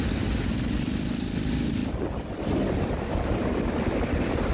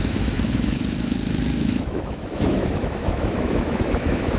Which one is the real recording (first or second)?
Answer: first